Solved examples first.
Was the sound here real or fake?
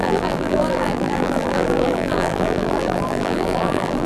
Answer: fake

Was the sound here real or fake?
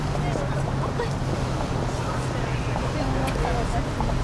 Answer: real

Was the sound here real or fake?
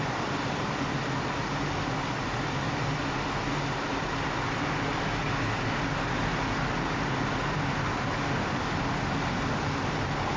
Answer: real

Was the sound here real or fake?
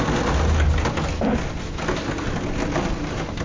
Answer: real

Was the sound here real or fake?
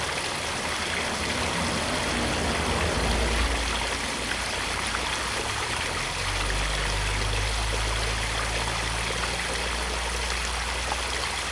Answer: real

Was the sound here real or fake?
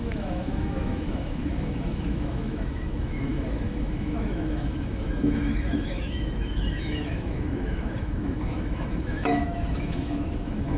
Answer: fake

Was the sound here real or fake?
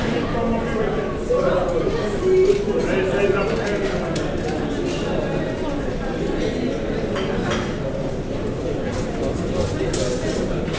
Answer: real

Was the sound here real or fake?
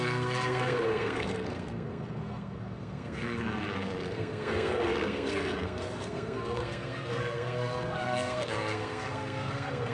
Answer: fake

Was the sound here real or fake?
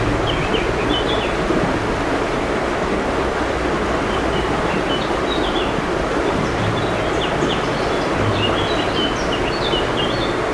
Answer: real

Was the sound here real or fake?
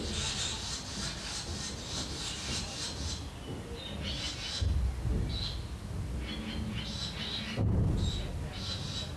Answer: real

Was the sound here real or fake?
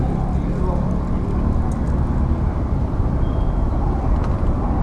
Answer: real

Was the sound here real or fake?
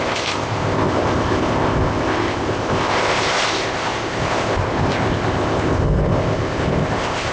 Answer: fake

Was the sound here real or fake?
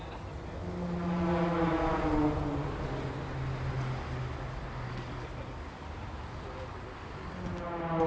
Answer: real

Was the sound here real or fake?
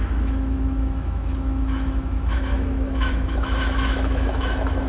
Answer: fake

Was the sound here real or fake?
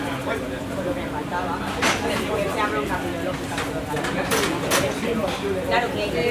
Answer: real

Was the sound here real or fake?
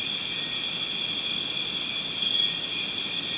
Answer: real